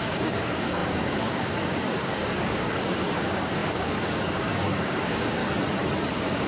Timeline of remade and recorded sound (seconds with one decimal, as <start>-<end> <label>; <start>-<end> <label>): 0.0-5.4 remade; 5.4-6.1 recorded; 6.1-6.5 remade